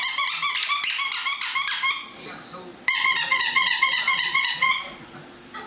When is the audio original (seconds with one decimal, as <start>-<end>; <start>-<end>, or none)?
0.0-2.7; 5.2-5.7